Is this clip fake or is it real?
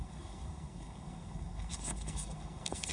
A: fake